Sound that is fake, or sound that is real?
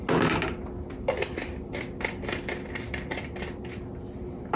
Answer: real